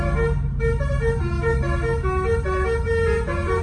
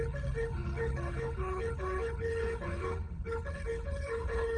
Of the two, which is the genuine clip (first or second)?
first